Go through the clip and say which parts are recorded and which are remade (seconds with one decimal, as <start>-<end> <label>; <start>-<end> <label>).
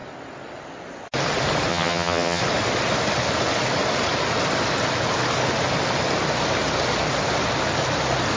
0.0-1.7 recorded; 1.7-2.4 remade; 2.4-8.4 recorded